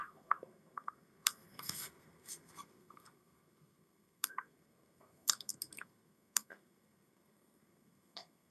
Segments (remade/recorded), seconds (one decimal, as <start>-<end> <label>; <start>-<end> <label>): 0.0-8.5 remade

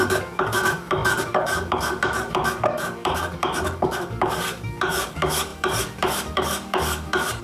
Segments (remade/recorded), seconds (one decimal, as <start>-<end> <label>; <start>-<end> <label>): 0.0-7.4 remade